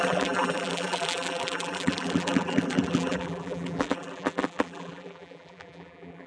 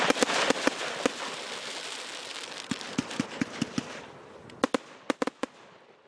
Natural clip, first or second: second